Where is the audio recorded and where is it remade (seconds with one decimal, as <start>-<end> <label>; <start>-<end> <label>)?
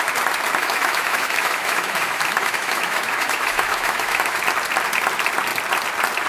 0.0-0.6 recorded; 0.6-4.4 remade; 4.4-6.3 recorded